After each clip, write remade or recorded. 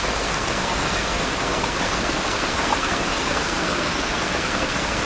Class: remade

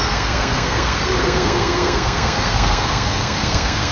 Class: remade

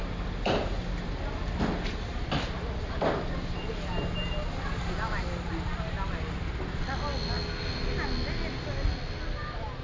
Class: recorded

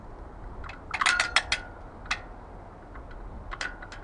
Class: recorded